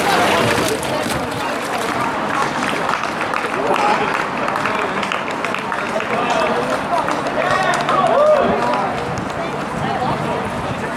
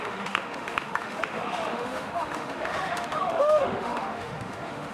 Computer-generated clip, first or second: second